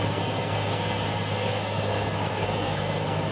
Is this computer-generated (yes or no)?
yes